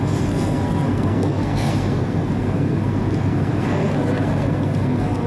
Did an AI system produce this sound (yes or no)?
yes